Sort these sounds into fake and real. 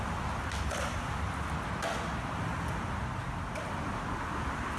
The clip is real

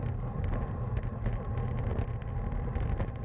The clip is real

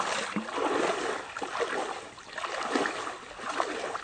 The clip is real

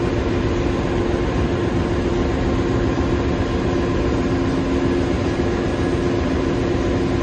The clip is real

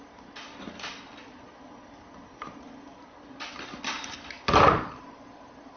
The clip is real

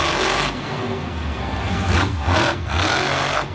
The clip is fake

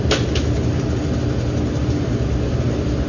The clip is real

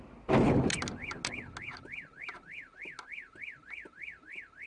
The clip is real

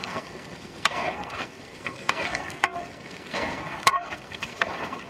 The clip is fake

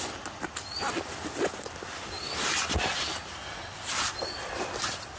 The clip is real